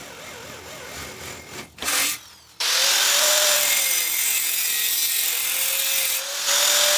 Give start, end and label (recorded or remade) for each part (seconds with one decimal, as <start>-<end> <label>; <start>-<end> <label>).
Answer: 0.0-1.0 recorded; 1.0-2.3 remade; 2.3-2.8 recorded; 2.8-3.8 remade; 3.8-7.0 recorded